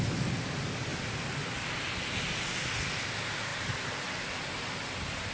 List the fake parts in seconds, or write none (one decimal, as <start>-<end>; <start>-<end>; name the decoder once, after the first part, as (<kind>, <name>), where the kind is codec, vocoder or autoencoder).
3.5-4.2 (vocoder, BigVGAN v2)